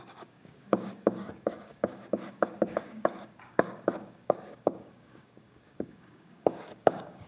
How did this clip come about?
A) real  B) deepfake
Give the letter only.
B